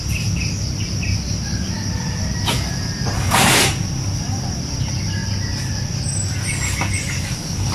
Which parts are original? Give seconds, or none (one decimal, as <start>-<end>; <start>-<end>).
5.2-5.7